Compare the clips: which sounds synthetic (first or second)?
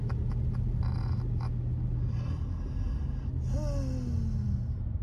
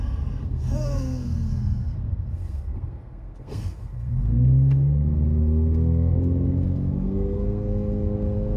second